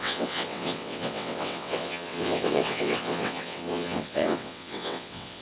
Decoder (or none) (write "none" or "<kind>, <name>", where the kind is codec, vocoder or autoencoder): vocoder, WaveNeXt